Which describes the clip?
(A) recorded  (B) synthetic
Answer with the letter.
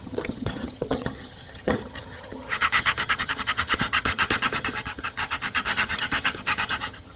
B